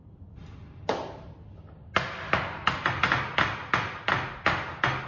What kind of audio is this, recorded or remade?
recorded